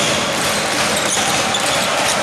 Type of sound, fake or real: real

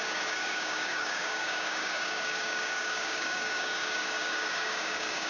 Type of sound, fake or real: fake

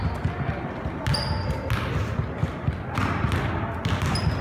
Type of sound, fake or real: real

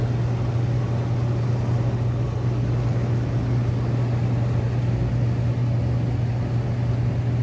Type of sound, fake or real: real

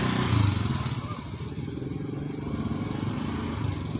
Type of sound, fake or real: real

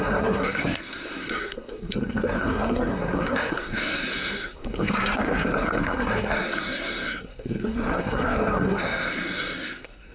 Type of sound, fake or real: fake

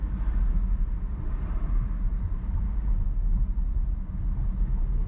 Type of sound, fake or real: fake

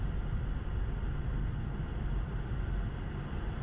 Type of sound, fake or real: real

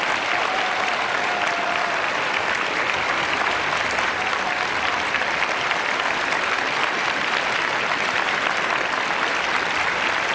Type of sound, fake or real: fake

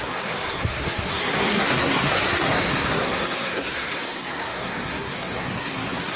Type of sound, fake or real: fake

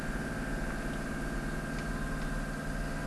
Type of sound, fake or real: real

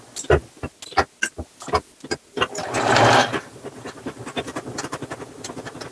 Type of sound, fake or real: real